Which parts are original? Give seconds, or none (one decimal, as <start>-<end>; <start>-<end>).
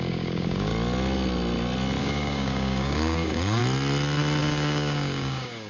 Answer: 0.7-2.0; 3.6-4.4